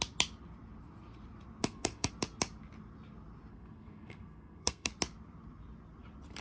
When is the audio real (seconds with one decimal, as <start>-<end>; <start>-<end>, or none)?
0.0-1.6; 2.1-3.5; 4.9-6.4